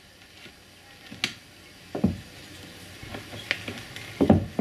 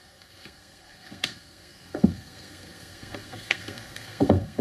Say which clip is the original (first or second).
first